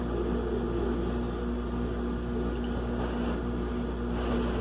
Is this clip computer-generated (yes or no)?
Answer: no